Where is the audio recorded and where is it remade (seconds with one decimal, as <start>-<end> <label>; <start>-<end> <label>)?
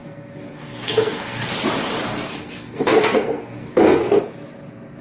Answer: 0.0-1.5 remade; 1.5-2.3 recorded; 2.3-4.2 remade; 4.2-5.0 recorded